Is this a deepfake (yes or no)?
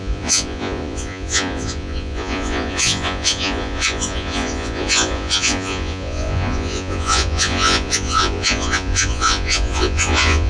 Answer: yes